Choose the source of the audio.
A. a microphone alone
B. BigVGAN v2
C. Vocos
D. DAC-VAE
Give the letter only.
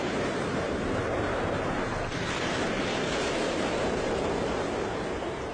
B